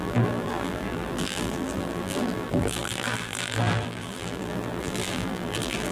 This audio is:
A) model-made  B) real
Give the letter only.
A